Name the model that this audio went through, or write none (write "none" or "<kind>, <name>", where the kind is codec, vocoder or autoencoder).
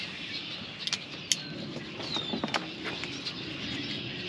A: none